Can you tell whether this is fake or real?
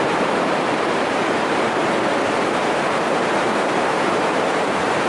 fake